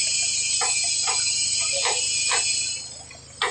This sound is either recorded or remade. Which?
recorded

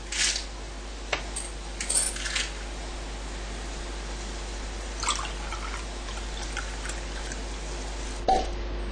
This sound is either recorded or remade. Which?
recorded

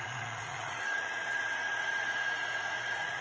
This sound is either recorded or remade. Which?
remade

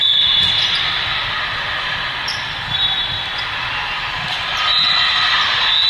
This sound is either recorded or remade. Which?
recorded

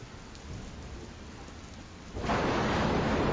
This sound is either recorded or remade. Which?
recorded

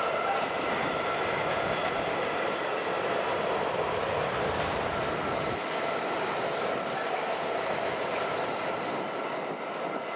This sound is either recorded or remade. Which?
recorded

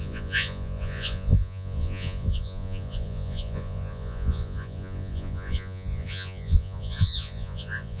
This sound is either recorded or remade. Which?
remade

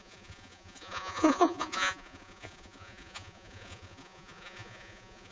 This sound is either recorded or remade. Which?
remade